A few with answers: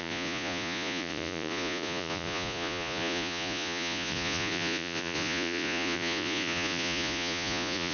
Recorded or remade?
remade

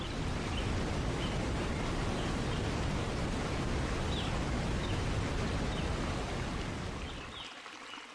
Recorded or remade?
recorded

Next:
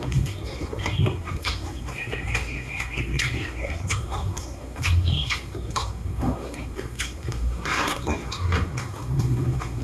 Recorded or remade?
remade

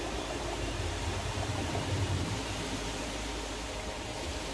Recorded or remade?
remade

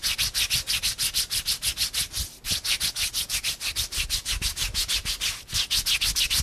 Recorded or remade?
recorded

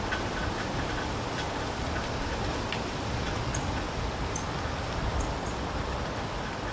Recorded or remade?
recorded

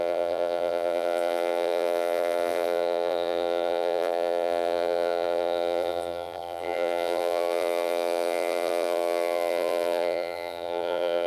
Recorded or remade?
remade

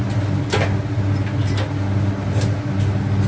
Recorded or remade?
recorded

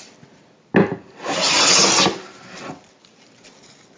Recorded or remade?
recorded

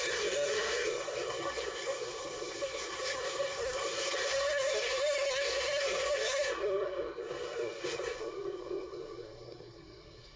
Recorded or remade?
remade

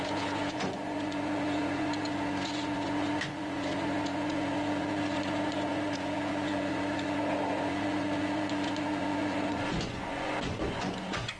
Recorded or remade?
remade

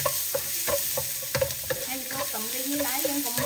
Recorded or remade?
recorded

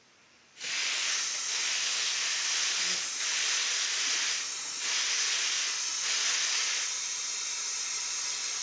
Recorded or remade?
recorded